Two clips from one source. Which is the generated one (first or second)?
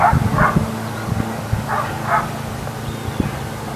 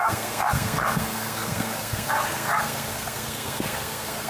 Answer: second